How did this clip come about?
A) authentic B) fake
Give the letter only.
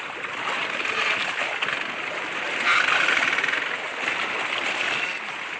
A